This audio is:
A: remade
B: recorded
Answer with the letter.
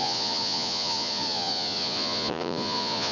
A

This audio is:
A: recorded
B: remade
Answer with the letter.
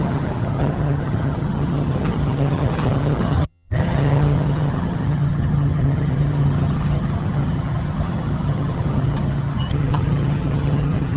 B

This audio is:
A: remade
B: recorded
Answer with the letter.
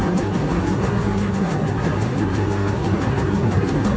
A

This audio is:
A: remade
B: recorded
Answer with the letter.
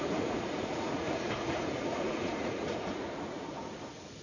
A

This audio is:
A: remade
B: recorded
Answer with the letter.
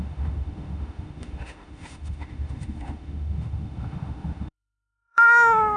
A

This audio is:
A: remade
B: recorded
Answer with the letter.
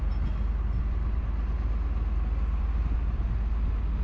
B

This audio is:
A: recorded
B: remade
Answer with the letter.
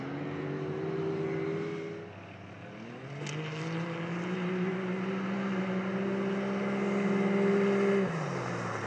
A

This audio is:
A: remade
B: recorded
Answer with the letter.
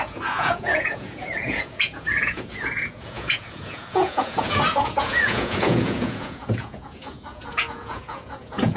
A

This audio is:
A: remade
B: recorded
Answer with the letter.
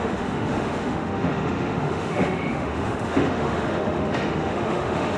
A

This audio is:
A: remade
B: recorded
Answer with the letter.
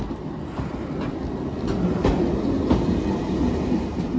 B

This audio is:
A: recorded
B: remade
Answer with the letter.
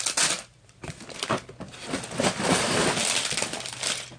A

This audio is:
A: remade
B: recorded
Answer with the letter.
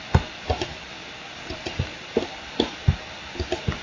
B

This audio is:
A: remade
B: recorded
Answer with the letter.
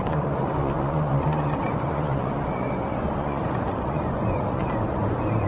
A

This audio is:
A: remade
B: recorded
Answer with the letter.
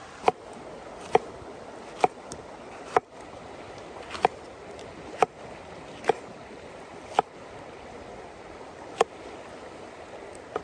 B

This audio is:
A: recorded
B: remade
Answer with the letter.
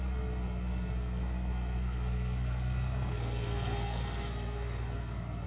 B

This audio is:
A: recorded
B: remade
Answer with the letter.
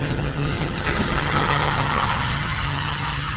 B